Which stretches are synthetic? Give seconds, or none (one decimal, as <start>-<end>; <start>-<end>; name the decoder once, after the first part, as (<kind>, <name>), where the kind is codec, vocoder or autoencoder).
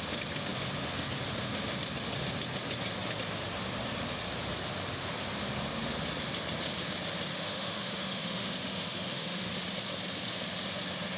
7.3-9.5 (autoencoder, DAC-VAE)